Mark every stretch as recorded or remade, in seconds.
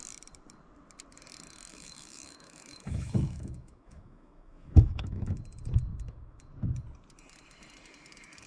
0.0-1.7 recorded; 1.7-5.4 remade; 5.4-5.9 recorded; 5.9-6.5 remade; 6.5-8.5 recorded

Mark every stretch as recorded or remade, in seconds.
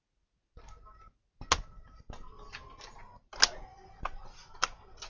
0.0-5.1 recorded